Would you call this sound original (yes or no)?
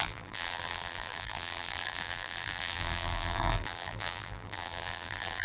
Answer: no